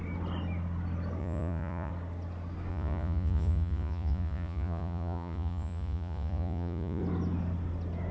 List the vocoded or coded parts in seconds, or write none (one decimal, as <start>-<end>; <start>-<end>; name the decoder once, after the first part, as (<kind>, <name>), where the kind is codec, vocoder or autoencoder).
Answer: 1.2-1.9 (vocoder, Vocos); 2.7-7.0